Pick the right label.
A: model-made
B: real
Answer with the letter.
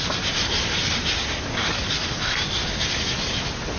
B